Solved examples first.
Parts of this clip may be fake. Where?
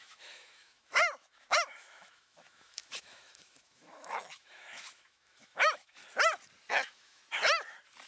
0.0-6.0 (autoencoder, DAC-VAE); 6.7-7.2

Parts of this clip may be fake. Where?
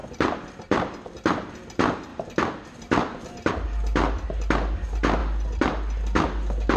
none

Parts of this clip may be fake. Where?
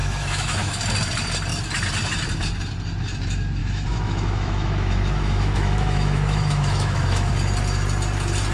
0.0-0.8 (autoencoder, DAC-VAE); 3.6-7.3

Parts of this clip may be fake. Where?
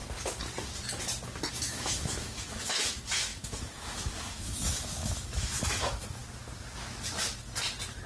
1.5-6.2 (autoencoder, DAC-VAE)